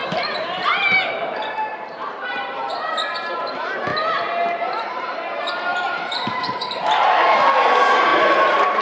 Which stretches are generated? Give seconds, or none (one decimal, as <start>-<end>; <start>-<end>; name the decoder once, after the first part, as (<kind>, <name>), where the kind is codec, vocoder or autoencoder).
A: 0.0-3.9 (vocoder, BigVGAN v2); 4.6-8.8